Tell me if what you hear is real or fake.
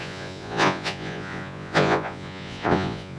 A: fake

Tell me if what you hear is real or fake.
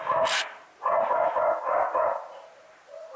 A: real